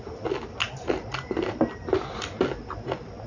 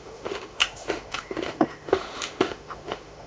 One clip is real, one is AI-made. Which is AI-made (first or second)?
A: second